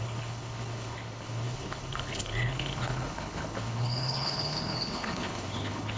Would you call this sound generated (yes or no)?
yes